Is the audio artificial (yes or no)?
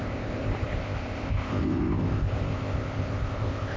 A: yes